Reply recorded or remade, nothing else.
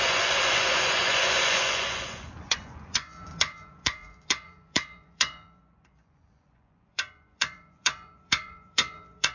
remade